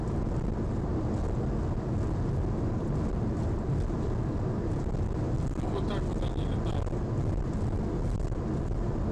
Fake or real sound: real